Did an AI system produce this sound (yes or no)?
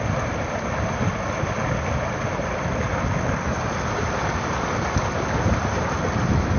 no